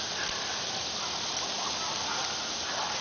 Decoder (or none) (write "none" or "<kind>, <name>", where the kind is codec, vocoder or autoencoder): none